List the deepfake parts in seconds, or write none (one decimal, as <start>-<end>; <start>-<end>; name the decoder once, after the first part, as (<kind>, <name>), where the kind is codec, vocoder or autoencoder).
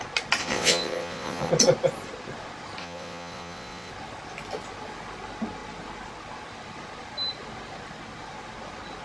0.4-1.5 (vocoder, WaveNeXt); 2.8-3.9